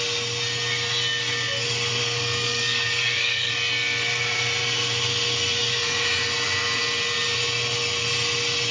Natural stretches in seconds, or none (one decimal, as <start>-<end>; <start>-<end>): 0.0-2.0; 3.5-5.6; 6.1-8.7